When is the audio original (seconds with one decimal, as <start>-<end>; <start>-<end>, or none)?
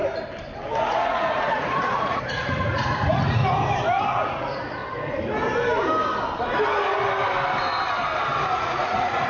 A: 0.0-0.8; 3.4-4.0; 4.8-8.5